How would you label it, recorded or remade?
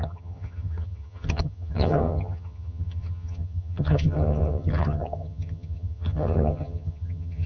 remade